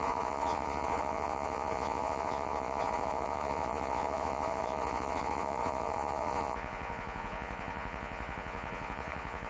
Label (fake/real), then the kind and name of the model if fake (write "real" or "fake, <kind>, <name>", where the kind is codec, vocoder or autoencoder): fake, vocoder, Vocos